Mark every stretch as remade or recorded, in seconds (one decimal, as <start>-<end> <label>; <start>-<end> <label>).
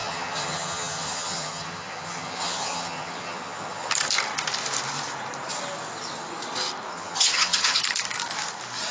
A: 0.0-3.9 remade; 3.9-6.9 recorded; 6.9-7.8 remade; 7.8-8.9 recorded